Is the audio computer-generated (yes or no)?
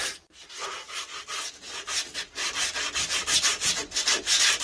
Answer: no